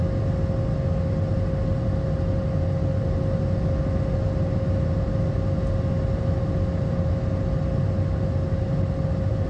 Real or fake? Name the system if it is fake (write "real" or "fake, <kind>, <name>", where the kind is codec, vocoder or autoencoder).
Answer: real